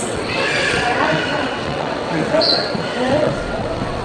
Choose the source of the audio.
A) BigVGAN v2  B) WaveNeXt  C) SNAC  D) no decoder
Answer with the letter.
B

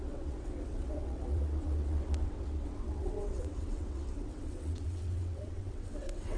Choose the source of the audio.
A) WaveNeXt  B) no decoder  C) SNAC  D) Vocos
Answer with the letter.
A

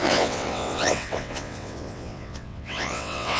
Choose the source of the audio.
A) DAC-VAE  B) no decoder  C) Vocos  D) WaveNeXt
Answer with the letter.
D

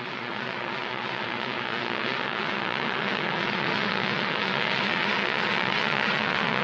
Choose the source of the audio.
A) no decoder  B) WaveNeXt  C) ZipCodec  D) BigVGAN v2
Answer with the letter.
B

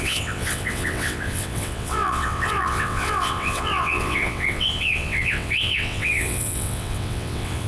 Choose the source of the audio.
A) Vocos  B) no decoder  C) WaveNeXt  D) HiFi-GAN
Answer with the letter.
C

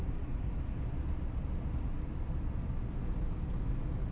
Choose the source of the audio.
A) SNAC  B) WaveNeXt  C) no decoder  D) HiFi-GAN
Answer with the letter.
C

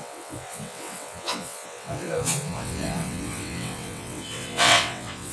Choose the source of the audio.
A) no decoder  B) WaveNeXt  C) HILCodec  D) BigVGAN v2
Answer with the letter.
B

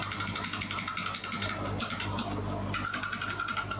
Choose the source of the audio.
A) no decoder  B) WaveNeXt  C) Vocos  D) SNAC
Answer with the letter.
A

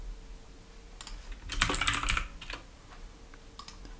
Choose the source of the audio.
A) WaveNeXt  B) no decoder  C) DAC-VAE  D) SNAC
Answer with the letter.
B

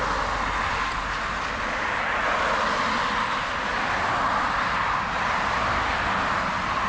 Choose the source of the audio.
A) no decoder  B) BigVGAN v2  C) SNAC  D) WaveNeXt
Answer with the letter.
A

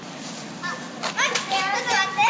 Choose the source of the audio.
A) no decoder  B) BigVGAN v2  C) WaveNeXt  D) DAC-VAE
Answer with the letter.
A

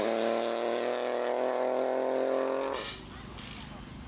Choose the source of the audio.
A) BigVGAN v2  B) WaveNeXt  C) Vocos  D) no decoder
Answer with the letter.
D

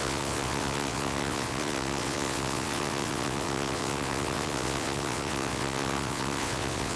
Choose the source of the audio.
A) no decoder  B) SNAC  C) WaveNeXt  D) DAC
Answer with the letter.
C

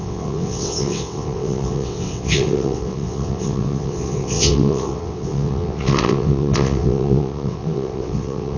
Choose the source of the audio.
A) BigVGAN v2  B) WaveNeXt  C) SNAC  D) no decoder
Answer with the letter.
B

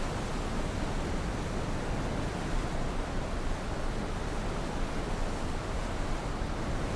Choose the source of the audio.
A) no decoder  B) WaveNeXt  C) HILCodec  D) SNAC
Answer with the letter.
A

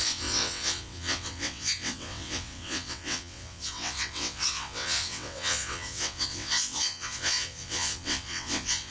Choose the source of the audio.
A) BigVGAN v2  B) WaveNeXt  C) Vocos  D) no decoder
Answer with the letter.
B